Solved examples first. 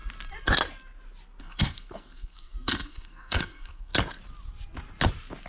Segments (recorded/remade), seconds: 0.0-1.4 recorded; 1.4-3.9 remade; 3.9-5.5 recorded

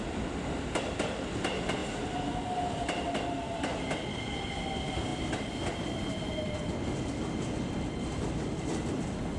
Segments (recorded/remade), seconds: 0.0-9.4 recorded

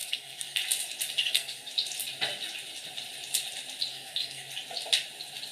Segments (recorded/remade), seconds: 0.0-0.6 remade; 0.6-1.2 recorded; 1.2-1.7 remade; 1.7-3.9 recorded; 3.9-4.5 remade; 4.5-5.5 recorded

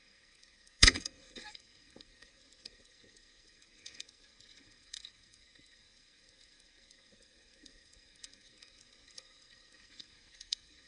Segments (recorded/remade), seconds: 0.0-10.9 remade

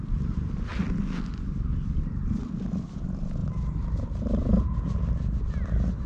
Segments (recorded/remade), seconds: 0.0-6.1 recorded

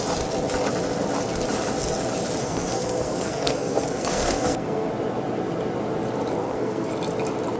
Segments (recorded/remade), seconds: 0.0-2.4 recorded; 2.4-4.9 remade; 4.9-6.4 recorded; 6.4-6.9 remade; 6.9-7.6 recorded

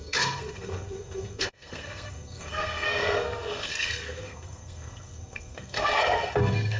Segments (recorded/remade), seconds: 0.0-6.8 remade